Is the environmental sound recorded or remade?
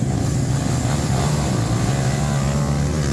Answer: recorded